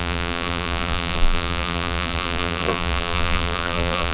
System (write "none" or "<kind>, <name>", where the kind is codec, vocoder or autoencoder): vocoder, BigVGAN v2